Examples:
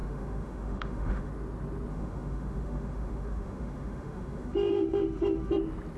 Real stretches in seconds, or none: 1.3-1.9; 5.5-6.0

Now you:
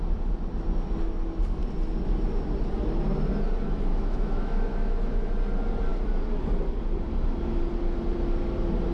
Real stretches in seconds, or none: 0.0-3.9; 5.3-8.9

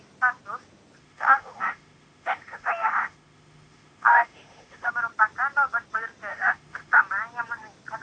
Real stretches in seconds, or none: 0.0-1.0; 4.9-6.3; 7.0-8.0

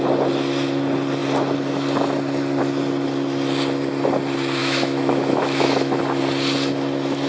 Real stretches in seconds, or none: 0.0-4.6; 6.0-7.3